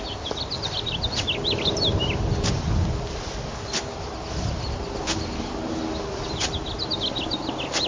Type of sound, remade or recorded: remade